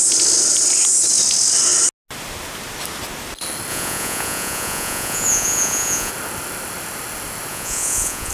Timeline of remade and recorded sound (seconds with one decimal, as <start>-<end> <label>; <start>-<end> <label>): 0.0-3.7 recorded; 3.7-6.1 remade; 6.1-7.5 recorded; 7.5-8.3 remade